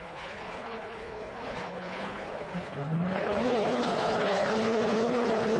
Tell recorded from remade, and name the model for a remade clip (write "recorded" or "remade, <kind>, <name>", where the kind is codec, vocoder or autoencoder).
remade, codec, HILCodec